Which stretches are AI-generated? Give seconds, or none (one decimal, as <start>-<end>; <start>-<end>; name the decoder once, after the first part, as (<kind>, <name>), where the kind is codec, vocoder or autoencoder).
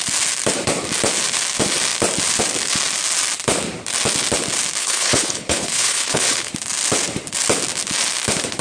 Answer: 4.8-6.5 (codec, HILCodec)